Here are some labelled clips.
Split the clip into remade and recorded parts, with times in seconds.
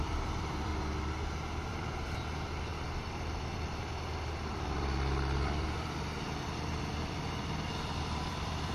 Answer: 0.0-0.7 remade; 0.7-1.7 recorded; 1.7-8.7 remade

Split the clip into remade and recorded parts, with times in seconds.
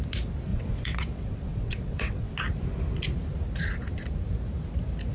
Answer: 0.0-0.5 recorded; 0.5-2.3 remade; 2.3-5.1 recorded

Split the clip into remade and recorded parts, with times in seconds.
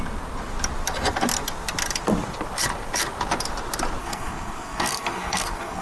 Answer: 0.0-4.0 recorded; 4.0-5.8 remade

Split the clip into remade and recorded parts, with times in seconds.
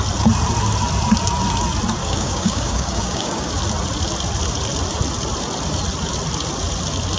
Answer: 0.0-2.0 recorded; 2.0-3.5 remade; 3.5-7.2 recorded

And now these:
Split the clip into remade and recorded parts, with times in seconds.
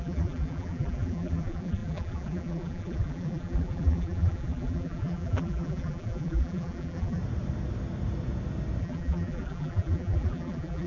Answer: 0.0-7.2 remade; 7.2-8.8 recorded; 8.8-10.9 remade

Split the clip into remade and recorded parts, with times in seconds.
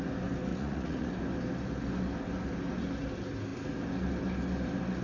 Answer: 0.0-0.5 recorded; 0.5-1.1 remade; 1.1-5.0 recorded